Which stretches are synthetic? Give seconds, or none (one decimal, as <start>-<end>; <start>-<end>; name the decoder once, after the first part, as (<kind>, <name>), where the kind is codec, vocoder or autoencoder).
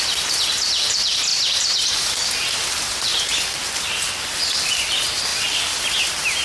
none